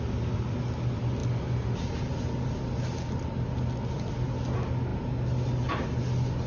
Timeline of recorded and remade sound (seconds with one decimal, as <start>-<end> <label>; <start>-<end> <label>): 0.0-6.5 recorded